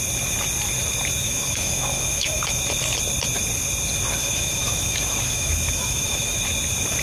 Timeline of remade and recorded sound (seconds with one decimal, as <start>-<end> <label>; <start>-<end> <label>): 0.0-1.2 recorded; 1.2-2.6 remade; 2.6-4.2 recorded; 4.2-6.4 remade; 6.4-7.0 recorded